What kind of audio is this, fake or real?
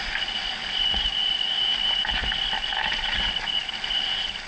real